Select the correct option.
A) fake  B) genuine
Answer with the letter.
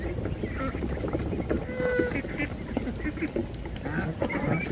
B